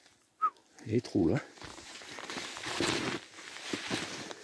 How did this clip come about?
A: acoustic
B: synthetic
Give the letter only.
A